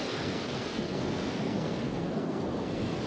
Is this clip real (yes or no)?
no